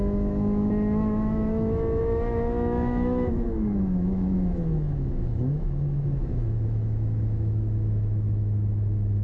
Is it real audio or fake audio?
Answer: fake